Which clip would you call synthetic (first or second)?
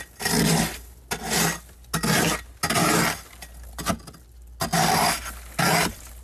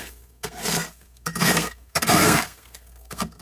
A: second